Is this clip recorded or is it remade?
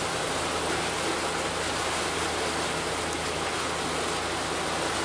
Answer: recorded